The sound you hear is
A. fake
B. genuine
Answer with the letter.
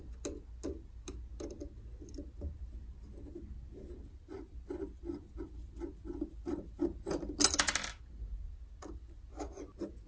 B